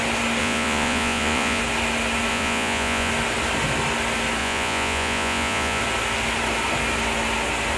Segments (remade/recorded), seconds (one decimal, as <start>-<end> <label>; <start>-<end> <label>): 0.0-0.4 recorded; 0.4-1.6 remade; 1.6-2.3 recorded; 2.3-3.1 remade; 3.1-4.4 recorded; 4.4-5.8 remade; 5.8-7.8 recorded